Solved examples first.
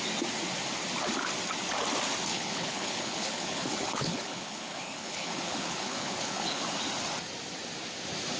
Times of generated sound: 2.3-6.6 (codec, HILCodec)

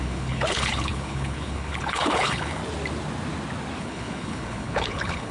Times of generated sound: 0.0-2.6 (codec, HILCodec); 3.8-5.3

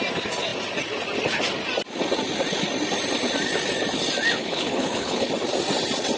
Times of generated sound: 4.4-5.3 (codec, HILCodec)

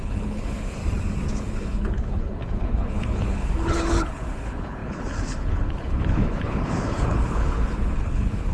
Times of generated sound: 0.0-0.8 (codec, HILCodec); 1.3-8.5

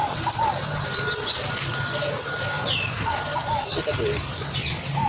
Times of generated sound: none

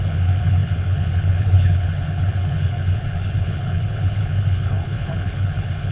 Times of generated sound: 0.0-5.9 (codec, HILCodec)

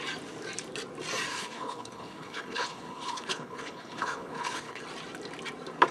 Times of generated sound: 1.3-4.8 (codec, HILCodec)

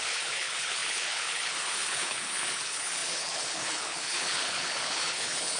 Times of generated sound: 0.0-5.6 (codec, HILCodec)